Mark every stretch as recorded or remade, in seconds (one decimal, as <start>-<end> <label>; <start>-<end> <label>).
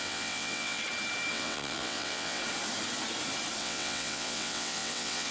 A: 0.0-0.8 remade; 0.8-1.3 recorded; 1.3-2.4 remade; 2.4-3.6 recorded; 3.6-5.3 remade